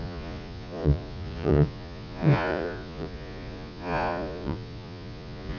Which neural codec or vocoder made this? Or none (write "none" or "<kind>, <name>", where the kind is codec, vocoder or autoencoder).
vocoder, Vocos